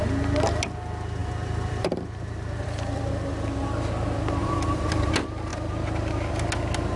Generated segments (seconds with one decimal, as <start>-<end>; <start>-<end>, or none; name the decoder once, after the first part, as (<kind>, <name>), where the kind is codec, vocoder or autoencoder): 1.2-3.1 (vocoder, BigVGAN v2); 4.4-5.1